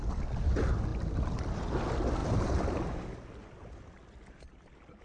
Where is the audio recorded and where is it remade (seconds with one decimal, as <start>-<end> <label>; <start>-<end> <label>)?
0.0-0.9 recorded; 0.9-1.6 remade; 1.6-5.0 recorded